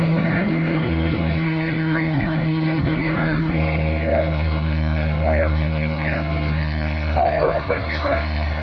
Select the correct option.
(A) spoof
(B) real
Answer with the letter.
A